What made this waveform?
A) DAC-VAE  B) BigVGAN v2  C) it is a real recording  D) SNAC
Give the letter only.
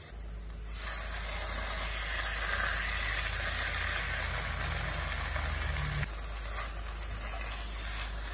C